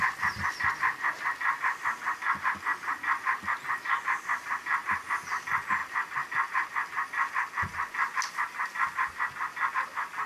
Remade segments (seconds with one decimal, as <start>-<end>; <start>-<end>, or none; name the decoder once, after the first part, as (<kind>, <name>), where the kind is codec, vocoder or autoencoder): none